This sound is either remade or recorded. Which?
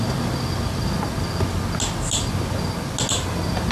recorded